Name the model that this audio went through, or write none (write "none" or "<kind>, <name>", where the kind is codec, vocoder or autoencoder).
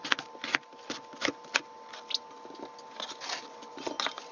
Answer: none